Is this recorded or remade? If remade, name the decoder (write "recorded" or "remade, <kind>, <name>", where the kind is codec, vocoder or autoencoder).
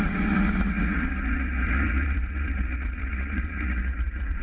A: remade, vocoder, Vocos